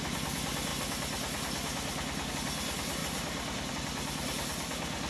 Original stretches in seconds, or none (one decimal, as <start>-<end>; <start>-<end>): 0.0-5.1